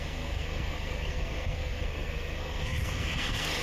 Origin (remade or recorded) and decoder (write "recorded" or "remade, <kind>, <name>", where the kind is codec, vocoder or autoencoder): remade, codec, SNAC